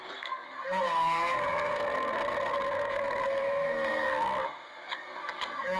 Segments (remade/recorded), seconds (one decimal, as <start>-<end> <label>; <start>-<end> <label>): 0.0-5.8 remade

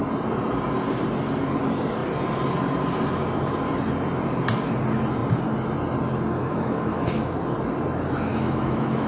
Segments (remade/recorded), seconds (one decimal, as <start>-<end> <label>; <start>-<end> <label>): 0.0-6.4 recorded; 6.4-7.2 remade; 7.2-8.3 recorded; 8.3-9.1 remade

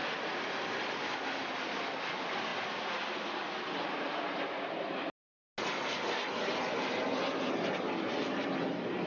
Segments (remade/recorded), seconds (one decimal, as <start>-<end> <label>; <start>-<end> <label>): 0.0-0.6 remade; 0.6-9.1 recorded